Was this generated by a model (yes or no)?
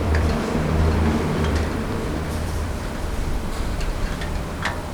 yes